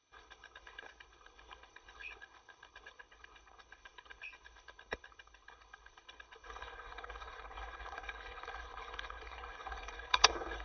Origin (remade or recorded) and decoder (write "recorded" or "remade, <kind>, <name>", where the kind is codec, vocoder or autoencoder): remade, codec, HILCodec